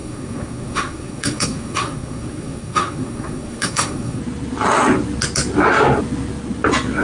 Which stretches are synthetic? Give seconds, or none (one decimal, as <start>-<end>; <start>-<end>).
0.0-4.2